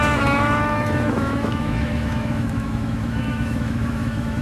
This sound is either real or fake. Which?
fake